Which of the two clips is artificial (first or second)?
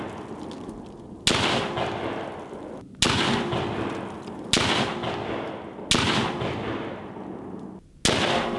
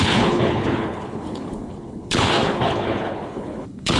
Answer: second